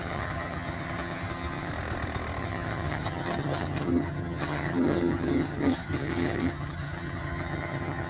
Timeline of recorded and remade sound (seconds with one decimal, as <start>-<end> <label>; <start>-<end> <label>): 0.0-1.7 remade; 1.7-2.4 recorded; 2.4-8.1 remade